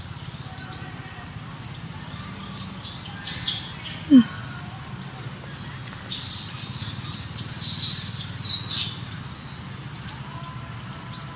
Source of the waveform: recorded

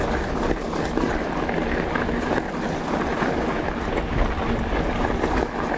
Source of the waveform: recorded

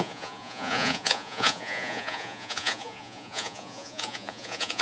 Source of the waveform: remade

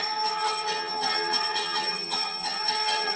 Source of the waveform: remade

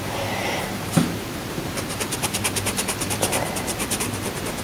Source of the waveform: remade